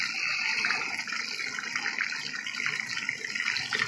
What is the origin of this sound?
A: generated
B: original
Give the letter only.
B